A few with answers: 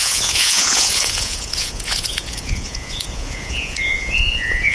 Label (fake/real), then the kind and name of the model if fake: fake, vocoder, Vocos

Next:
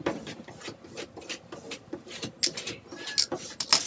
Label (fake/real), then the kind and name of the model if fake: real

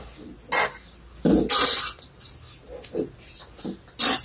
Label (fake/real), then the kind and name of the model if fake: real